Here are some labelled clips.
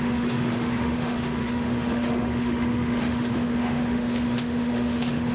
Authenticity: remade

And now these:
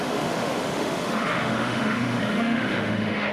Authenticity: remade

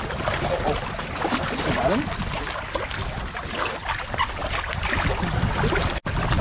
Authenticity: recorded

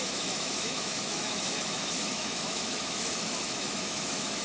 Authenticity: remade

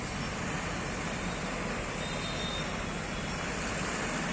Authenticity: recorded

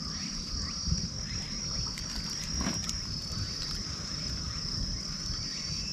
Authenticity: recorded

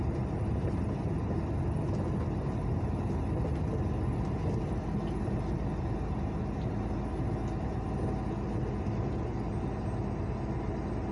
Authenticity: recorded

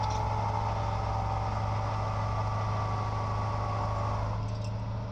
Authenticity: recorded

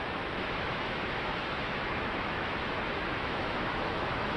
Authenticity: remade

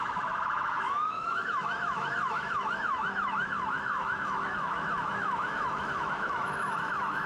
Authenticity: remade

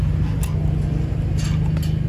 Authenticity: recorded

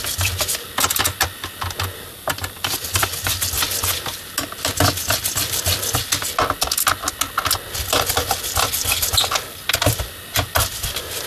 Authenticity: recorded